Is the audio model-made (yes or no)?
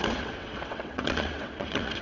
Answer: yes